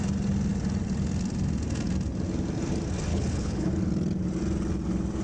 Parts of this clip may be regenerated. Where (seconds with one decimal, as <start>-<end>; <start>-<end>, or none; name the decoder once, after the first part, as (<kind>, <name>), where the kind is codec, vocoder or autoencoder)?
3.1-3.7 (codec, HILCodec)

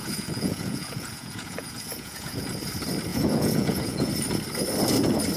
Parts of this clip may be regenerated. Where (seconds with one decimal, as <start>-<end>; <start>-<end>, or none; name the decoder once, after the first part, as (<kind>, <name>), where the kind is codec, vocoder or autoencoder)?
0.0-2.5 (vocoder, Vocos); 3.1-4.1

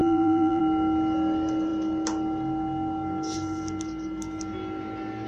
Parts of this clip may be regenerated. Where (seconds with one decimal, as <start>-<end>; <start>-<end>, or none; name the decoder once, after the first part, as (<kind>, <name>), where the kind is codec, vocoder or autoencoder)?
0.0-0.6 (vocoder, BigVGAN v2)